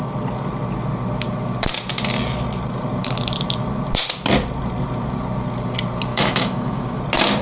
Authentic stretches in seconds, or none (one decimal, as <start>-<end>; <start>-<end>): 0.0-6.1; 7.0-7.4